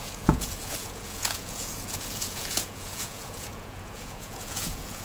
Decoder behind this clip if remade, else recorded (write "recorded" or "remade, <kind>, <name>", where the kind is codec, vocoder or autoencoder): remade, vocoder, Vocos